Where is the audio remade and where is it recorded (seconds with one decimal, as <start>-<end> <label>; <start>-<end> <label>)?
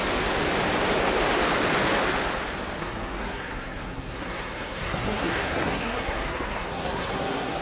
0.0-2.8 recorded; 2.8-7.6 remade